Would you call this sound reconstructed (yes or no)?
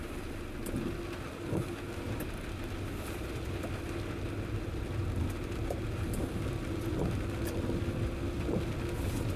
no